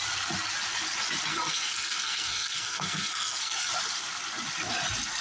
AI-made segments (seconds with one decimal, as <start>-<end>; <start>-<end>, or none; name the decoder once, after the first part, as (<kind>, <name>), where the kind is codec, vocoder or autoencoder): 1.3-3.7 (codec, SNAC)